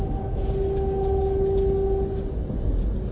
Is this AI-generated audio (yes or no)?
no